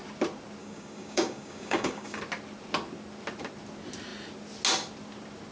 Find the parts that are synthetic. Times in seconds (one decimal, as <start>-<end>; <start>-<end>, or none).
0.6-2.2